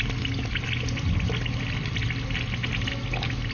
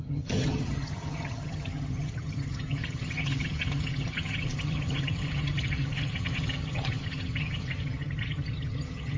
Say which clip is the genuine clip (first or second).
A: first